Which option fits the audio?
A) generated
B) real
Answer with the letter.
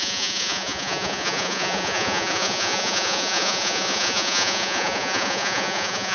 A